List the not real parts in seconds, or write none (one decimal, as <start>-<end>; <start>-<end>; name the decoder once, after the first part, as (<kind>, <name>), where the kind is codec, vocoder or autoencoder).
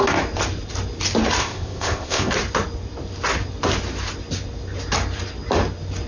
1.4-2.3 (codec, ZipCodec)